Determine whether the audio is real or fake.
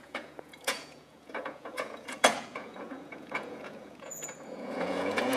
fake